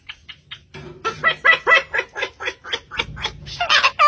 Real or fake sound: real